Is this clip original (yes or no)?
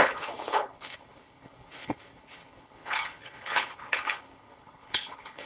no